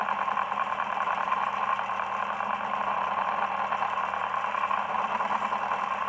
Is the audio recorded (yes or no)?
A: yes